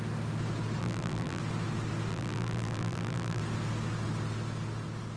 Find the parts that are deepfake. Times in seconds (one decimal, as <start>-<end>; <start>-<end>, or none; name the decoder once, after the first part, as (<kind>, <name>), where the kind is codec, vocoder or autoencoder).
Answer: 0.8-1.4 (vocoder, BigVGAN v2); 2.1-3.4